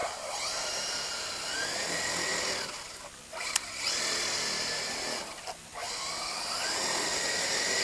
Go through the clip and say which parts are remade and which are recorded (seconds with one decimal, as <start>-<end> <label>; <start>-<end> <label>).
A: 0.0-7.8 recorded

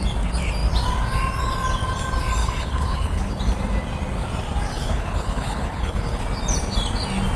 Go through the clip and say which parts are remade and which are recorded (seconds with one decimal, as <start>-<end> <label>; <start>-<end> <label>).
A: 0.0-2.4 recorded; 2.4-3.4 remade; 3.4-4.7 recorded; 4.7-6.2 remade; 6.2-7.4 recorded